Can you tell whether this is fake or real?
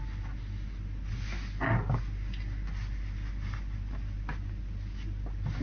real